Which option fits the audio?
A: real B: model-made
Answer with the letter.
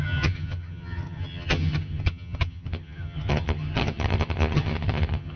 B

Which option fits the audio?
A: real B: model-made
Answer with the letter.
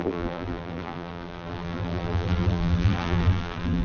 B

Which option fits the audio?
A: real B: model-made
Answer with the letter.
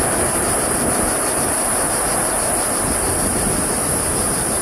A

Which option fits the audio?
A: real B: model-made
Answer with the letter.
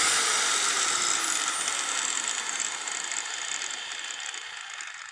A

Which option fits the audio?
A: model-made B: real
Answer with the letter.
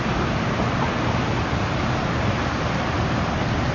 B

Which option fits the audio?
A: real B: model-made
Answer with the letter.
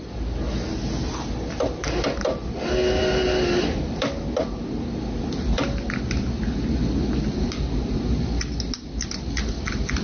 A